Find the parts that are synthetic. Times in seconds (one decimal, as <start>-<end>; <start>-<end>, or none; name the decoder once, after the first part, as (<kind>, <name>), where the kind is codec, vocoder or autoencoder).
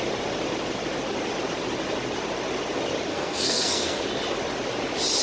3.1-4.0 (codec, SNAC)